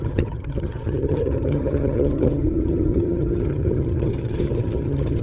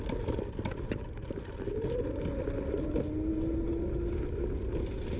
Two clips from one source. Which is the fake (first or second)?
first